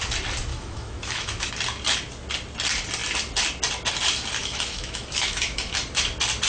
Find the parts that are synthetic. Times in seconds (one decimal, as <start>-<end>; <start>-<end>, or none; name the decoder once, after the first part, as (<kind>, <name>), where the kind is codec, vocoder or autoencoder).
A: 0.5-1.5 (autoencoder, DAC-VAE); 4.4-5.7

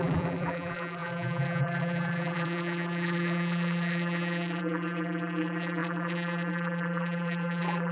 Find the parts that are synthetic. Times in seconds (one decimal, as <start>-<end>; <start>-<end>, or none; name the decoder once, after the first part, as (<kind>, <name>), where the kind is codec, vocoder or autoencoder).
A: 0.0-7.9 (vocoder, BigVGAN v2)

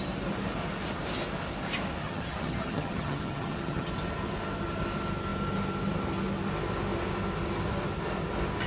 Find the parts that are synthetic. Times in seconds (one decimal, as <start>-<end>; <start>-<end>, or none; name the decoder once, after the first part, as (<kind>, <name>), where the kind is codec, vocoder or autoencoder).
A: 2.0-3.9 (vocoder, HiFi-GAN)

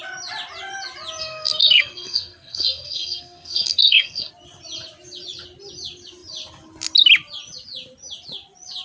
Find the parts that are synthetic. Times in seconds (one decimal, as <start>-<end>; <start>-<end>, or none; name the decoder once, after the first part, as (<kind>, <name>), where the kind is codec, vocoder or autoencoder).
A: 1.2-4.3 (codec, SNAC)